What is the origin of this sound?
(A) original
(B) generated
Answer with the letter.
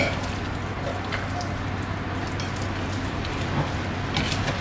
A